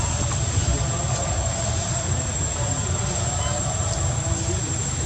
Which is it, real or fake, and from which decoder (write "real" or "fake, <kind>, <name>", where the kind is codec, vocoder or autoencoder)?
fake, vocoder, BigVGAN v2